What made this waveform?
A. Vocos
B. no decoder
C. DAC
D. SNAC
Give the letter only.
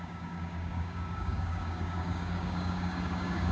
C